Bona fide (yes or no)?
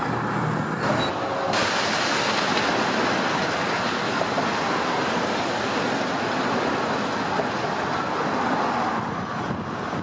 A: yes